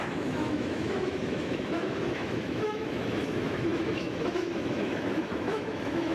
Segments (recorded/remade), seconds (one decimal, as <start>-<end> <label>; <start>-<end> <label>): 0.0-6.1 remade